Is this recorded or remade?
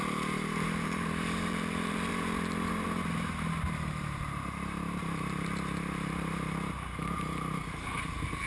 remade